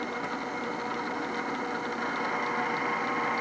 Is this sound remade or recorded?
recorded